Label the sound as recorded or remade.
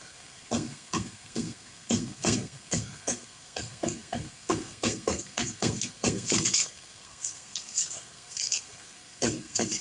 remade